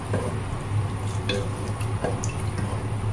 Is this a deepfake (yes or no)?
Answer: no